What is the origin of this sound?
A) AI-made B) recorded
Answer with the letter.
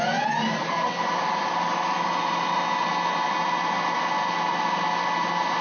B